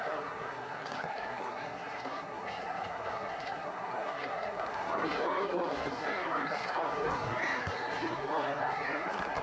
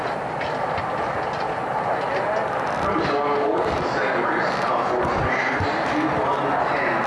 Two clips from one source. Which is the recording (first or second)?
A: second